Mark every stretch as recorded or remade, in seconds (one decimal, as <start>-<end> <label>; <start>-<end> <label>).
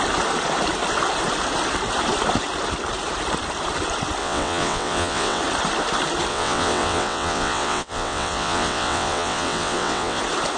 0.0-4.2 recorded; 4.2-5.4 remade; 5.4-6.3 recorded; 6.3-10.2 remade; 10.2-10.6 recorded